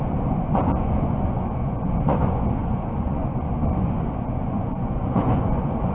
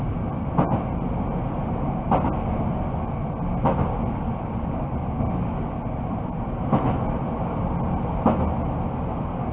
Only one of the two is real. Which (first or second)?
second